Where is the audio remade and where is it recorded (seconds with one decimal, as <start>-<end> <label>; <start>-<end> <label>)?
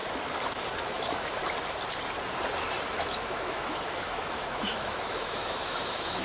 0.0-0.9 recorded; 0.9-1.4 remade; 1.4-2.9 recorded; 2.9-6.2 remade